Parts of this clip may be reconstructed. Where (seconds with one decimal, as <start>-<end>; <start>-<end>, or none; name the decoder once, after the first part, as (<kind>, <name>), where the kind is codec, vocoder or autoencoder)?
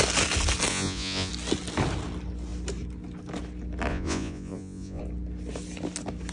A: 0.7-1.3 (vocoder, Vocos); 3.9-5.0